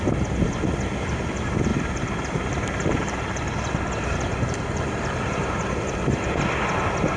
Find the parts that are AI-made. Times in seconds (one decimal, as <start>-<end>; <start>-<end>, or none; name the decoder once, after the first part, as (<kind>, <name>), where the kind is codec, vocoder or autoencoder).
1.7-6.0 (vocoder, BigVGAN v2)